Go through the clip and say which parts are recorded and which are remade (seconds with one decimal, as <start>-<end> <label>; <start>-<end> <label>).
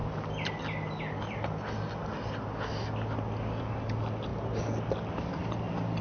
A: 0.0-6.0 recorded